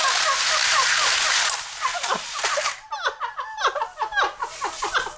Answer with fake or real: real